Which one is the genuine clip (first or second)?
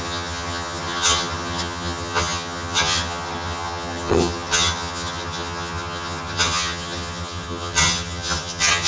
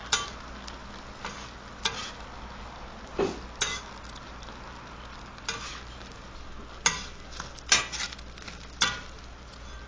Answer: second